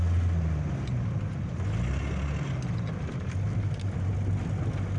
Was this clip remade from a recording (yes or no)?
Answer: no